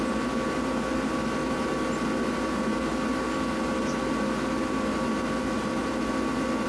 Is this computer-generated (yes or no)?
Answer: no